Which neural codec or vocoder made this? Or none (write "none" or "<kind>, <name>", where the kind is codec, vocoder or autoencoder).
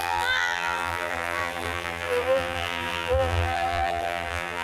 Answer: vocoder, BigVGAN v2